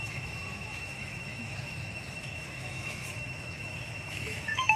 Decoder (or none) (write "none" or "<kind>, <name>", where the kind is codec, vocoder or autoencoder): autoencoder, DAC-VAE